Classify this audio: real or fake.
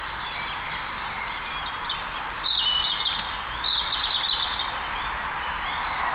real